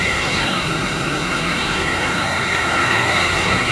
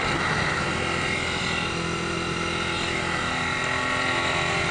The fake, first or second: first